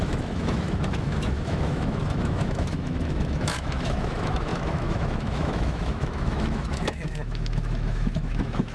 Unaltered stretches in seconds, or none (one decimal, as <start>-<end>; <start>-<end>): none